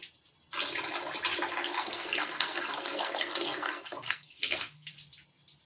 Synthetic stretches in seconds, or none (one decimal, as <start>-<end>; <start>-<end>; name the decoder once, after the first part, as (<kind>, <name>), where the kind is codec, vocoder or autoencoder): 1.5-4.9 (codec, SNAC)